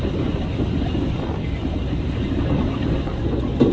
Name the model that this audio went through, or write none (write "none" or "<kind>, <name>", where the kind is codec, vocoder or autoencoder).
none